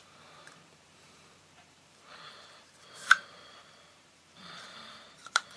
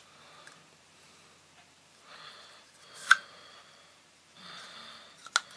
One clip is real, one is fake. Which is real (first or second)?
second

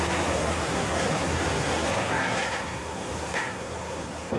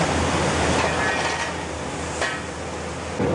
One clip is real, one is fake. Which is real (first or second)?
second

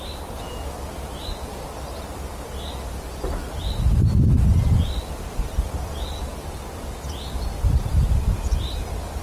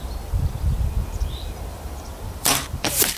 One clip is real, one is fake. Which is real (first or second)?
first